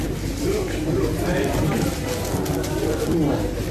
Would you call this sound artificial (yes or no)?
no